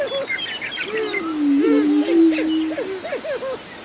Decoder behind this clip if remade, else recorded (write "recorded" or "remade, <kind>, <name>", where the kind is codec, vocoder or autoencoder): recorded